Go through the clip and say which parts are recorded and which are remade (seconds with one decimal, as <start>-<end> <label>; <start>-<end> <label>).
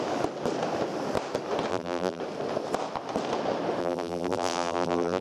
0.0-1.7 recorded; 1.7-2.2 remade; 2.2-3.8 recorded; 3.8-5.2 remade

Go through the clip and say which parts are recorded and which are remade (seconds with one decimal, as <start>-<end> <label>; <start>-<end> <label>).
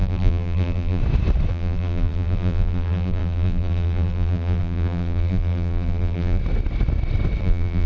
0.0-1.0 remade; 1.0-1.5 recorded; 1.5-6.4 remade; 6.4-7.4 recorded; 7.4-7.9 remade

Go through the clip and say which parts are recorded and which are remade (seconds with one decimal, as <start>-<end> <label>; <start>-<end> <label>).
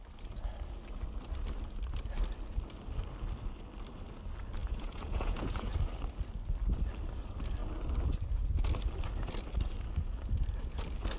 0.0-4.6 recorded; 4.6-5.7 remade; 5.7-11.2 recorded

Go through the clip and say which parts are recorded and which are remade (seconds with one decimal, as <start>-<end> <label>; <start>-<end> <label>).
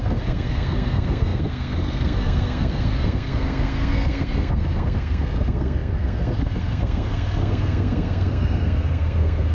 0.0-9.5 remade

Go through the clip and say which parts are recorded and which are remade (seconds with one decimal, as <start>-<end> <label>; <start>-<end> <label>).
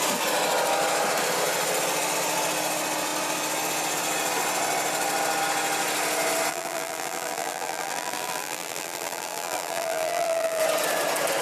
0.0-6.5 recorded; 6.5-10.6 remade; 10.6-11.4 recorded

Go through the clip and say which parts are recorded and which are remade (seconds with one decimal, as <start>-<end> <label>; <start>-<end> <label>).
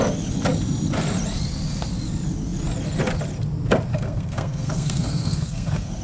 0.0-3.9 recorded; 3.9-6.0 remade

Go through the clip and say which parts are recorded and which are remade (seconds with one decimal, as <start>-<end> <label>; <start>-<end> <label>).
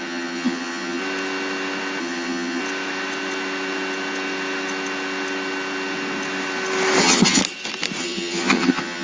0.0-1.0 remade; 1.0-2.0 recorded; 2.0-2.6 remade; 2.6-7.0 recorded; 7.0-7.4 remade; 7.4-8.0 recorded; 8.0-9.0 remade